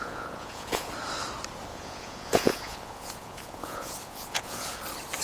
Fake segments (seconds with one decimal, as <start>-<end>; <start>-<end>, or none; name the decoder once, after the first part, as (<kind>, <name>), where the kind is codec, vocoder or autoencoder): 0.0-0.9 (vocoder, Vocos); 1.7-4.8